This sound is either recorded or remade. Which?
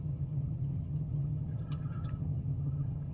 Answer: remade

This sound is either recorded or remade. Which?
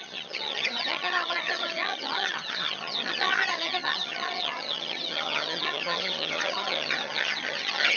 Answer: remade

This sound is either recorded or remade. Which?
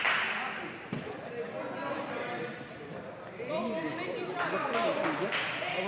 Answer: recorded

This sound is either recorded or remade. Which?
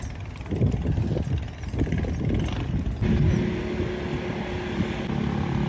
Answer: recorded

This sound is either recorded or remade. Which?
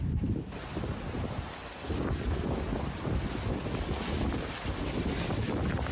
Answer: recorded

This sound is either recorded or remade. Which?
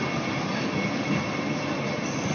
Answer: recorded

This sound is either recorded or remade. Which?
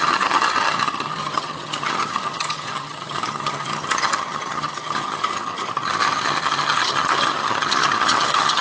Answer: remade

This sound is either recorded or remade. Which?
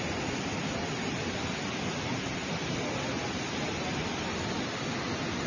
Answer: recorded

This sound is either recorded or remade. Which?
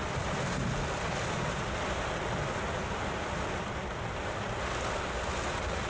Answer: recorded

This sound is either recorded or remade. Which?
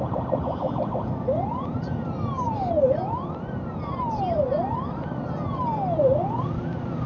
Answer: recorded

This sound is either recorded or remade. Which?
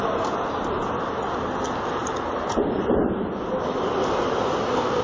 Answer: recorded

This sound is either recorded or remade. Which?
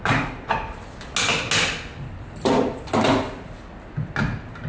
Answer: recorded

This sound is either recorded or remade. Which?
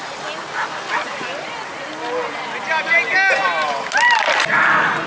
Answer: recorded